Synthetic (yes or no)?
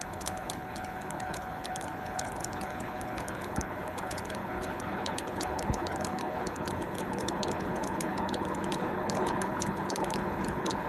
yes